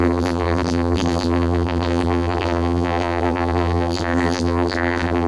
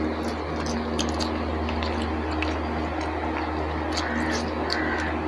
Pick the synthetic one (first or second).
first